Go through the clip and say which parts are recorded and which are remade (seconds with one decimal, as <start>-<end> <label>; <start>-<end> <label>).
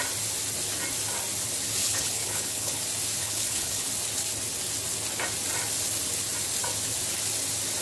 0.0-1.8 recorded; 1.8-2.8 remade; 2.8-3.2 recorded; 3.2-3.9 remade; 3.9-7.8 recorded